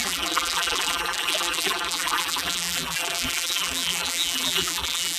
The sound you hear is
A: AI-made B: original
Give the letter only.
A